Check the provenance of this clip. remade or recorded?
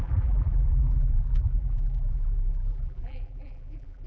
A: remade